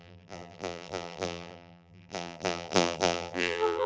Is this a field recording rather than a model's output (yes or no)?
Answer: no